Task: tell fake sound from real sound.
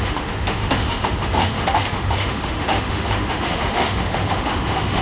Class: fake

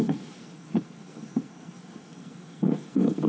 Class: fake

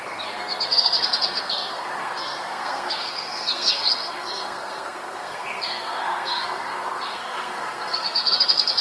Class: fake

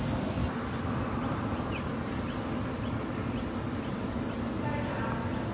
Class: real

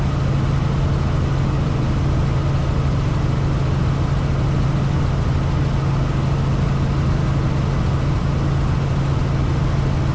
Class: real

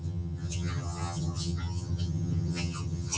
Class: fake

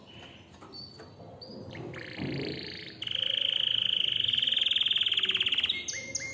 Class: real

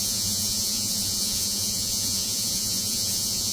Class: fake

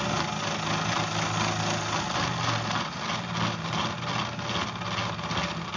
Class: real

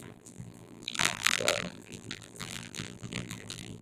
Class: fake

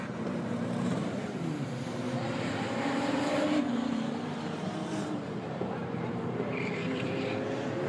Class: fake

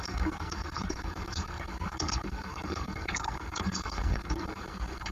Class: fake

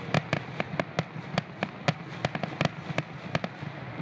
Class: real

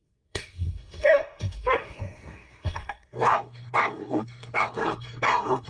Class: fake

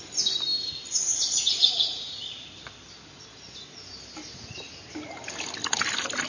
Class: real